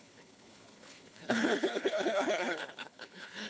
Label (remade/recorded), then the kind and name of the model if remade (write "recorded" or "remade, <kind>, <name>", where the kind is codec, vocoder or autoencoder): remade, codec, HILCodec